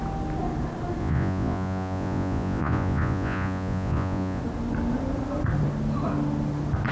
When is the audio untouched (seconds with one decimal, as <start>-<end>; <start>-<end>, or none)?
0.0-1.0; 4.4-6.9